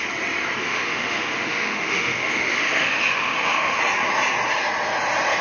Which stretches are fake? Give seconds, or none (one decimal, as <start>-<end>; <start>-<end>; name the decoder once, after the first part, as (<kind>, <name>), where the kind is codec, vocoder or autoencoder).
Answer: 0.6-3.8 (autoencoder, DAC-VAE)